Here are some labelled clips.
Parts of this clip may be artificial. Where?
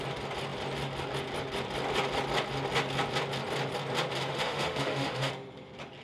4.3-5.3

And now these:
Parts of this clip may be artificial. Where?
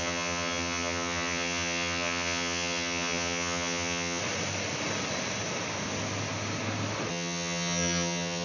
0.0-4.2; 7.1-8.4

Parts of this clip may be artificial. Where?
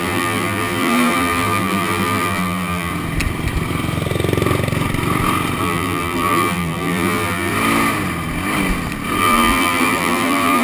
0.0-2.9; 5.6-7.5; 9.2-10.6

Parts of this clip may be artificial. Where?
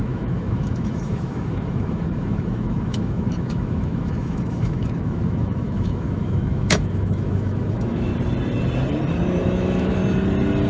0.0-8.1; 9.4-10.0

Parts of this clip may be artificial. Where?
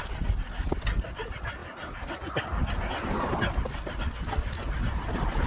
none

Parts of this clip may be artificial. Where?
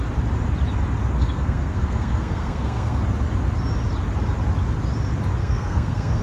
1.2-3.0; 5.4-6.2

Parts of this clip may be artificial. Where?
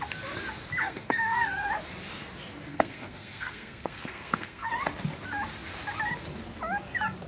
0.8-1.7; 2.7-4.7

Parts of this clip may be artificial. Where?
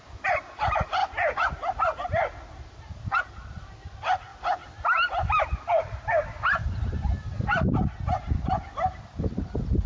none